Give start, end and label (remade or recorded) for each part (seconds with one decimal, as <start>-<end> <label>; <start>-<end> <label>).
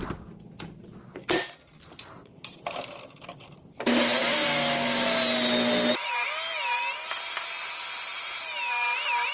0.0-9.3 recorded